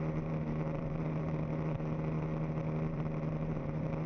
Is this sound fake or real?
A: fake